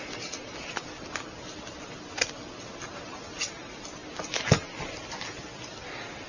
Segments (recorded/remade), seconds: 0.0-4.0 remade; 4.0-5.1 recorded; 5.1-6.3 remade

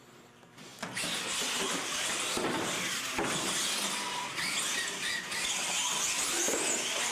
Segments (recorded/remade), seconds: 0.0-7.1 recorded